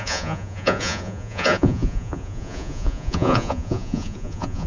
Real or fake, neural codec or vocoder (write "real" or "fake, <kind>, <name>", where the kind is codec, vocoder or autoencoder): fake, vocoder, Vocos